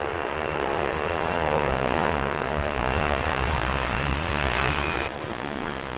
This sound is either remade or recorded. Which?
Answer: remade